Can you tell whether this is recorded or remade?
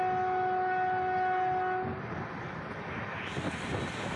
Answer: recorded